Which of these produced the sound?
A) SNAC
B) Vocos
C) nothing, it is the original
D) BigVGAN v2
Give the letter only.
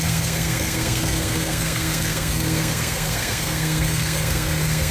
A